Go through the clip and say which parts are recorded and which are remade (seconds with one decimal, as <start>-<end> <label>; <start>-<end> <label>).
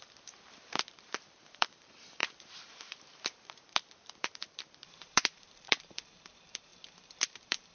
0.0-6.7 remade; 6.7-7.3 recorded; 7.3-7.7 remade